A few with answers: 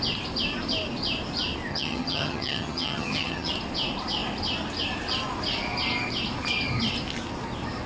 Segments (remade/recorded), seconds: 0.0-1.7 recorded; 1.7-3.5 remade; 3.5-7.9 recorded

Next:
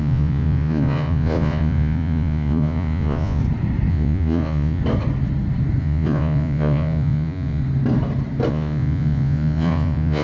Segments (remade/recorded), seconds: 0.0-3.4 remade; 3.4-3.9 recorded; 3.9-4.8 remade; 4.8-5.8 recorded; 5.8-7.6 remade; 7.6-8.5 recorded; 8.5-10.2 remade

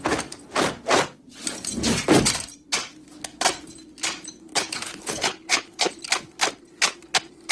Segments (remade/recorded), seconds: 0.0-4.5 recorded; 4.5-6.0 remade; 6.0-7.5 recorded

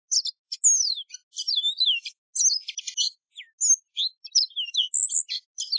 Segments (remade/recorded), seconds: 0.0-2.6 recorded; 2.6-3.4 remade; 3.4-5.8 recorded

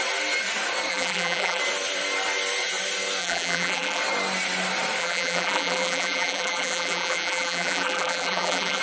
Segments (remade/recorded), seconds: 0.0-0.9 recorded; 0.9-1.6 remade; 1.6-3.2 recorded; 3.2-4.0 remade; 4.0-5.0 recorded; 5.0-8.8 remade